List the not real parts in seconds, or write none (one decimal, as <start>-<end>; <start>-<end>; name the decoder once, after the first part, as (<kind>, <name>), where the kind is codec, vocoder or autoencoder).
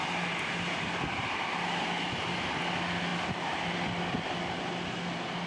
none